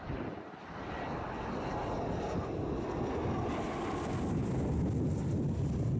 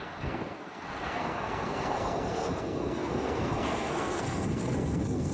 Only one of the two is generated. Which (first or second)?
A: second